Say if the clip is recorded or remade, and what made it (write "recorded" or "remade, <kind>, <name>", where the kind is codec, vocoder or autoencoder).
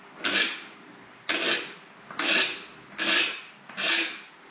recorded